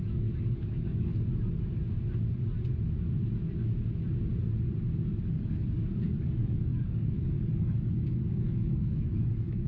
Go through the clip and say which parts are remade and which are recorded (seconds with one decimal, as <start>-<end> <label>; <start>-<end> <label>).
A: 0.0-1.1 remade; 1.1-5.3 recorded; 5.3-9.7 remade